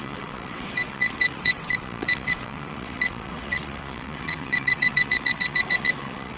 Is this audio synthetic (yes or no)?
yes